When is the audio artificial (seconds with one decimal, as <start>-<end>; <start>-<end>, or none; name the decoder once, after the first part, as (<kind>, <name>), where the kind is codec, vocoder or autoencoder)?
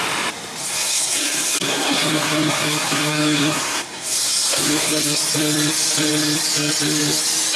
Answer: 0.6-5.2 (codec, SNAC)